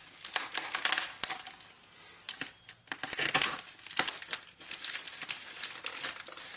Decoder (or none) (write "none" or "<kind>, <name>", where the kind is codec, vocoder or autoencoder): none